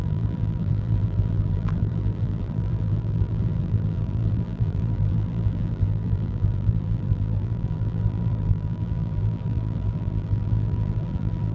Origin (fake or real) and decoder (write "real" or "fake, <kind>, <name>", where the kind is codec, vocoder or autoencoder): fake, vocoder, BigVGAN v2